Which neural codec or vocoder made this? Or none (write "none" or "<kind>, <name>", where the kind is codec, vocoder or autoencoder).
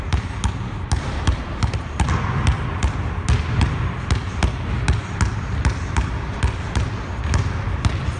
none